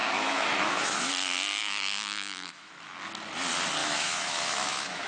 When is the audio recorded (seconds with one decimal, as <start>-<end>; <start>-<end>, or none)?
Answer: 1.1-1.6; 2.7-3.8